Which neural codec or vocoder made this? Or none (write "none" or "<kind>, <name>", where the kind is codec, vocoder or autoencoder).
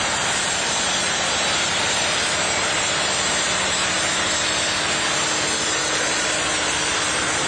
none